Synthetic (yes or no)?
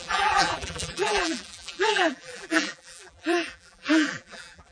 yes